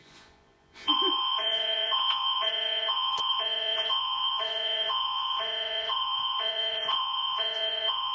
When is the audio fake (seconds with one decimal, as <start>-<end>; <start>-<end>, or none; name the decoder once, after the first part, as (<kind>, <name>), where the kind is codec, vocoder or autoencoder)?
0.0-8.1 (vocoder, Vocos)